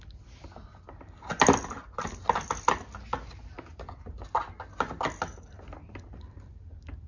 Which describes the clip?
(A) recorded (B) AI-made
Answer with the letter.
A